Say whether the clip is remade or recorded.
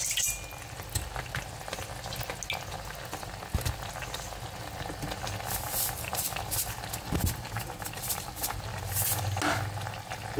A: recorded